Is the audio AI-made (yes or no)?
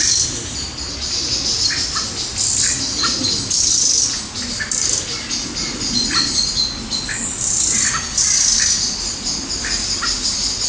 no